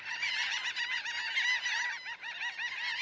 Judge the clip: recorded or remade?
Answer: recorded